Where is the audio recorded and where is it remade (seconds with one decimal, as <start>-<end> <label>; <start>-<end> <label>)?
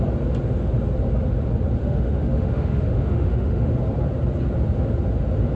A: 0.0-1.8 recorded; 1.8-3.7 remade; 3.7-5.5 recorded